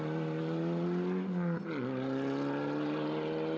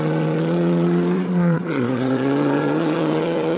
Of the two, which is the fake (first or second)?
second